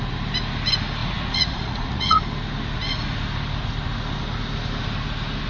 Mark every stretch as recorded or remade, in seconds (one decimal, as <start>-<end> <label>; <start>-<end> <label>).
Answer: 0.0-1.0 recorded; 1.0-2.2 remade; 2.2-5.5 recorded